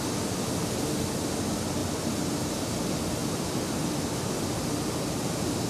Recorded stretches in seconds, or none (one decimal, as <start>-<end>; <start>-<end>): 0.0-1.8; 2.6-5.7